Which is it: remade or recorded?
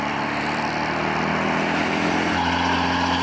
recorded